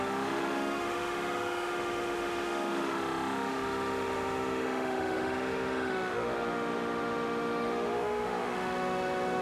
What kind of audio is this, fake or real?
fake